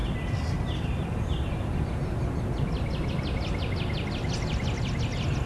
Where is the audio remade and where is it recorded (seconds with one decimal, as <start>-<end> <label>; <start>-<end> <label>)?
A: 0.0-5.5 recorded